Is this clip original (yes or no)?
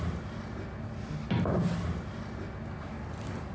yes